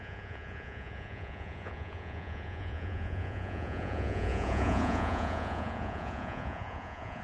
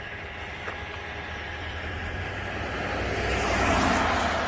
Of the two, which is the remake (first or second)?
first